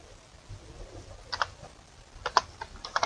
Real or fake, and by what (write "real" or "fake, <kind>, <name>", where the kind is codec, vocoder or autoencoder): real